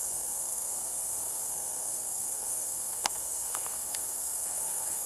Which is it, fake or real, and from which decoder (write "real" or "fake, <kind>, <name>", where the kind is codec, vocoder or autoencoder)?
fake, codec, SNAC